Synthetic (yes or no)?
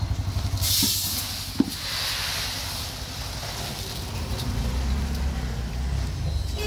no